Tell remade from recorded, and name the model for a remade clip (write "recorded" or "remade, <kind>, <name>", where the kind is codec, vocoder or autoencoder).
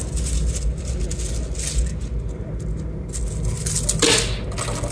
recorded